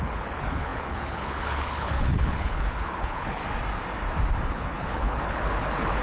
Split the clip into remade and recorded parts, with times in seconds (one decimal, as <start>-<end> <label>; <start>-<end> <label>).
0.0-3.4 remade; 3.4-4.5 recorded; 4.5-6.0 remade